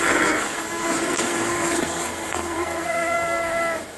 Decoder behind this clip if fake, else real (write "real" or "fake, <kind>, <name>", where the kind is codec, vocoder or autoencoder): fake, codec, SNAC